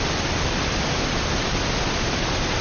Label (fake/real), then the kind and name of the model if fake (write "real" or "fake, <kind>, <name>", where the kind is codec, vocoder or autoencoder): real